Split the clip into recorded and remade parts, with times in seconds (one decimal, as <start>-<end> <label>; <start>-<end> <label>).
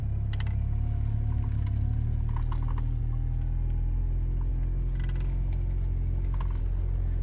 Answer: 0.0-7.2 recorded